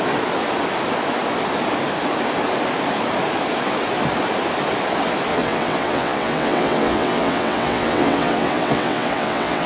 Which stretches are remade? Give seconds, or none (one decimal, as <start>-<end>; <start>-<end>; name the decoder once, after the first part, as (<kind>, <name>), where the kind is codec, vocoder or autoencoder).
5.3-9.7 (vocoder, WaveNeXt)